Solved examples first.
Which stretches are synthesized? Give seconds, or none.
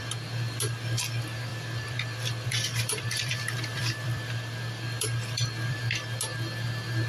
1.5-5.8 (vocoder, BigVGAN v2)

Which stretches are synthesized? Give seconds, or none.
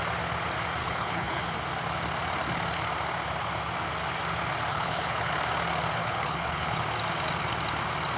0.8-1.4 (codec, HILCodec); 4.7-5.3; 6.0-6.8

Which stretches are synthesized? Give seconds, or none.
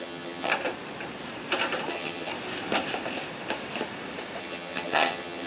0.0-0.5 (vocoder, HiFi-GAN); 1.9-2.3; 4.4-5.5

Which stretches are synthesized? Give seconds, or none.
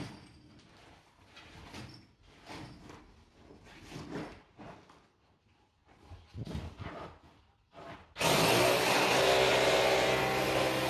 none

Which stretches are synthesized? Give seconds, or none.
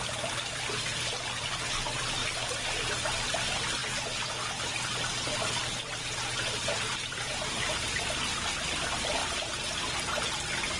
2.2-2.9 (vocoder, BigVGAN v2); 6.4-8.0; 9.2-9.8